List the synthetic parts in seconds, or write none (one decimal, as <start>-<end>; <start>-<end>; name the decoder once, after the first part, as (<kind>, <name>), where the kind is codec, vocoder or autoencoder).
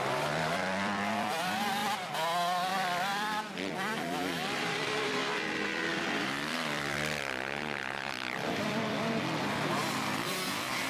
0.0-10.9 (vocoder, BigVGAN v2)